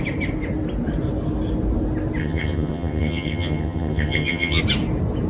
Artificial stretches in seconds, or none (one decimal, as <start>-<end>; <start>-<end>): 2.2-4.6